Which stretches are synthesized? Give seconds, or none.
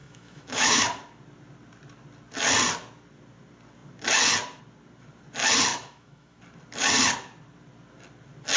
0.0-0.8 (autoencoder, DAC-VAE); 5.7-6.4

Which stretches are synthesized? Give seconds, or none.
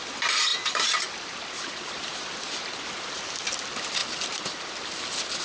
none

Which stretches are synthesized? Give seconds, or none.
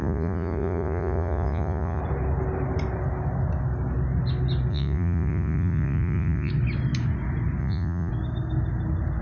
0.0-2.0 (vocoder, Vocos); 4.7-6.5; 7.6-8.1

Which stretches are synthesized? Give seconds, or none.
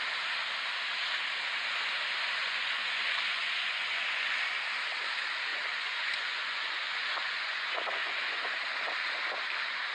2.4-4.4 (vocoder, Vocos); 5.5-8.5